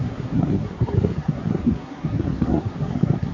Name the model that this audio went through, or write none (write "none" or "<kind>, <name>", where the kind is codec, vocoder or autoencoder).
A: codec, SNAC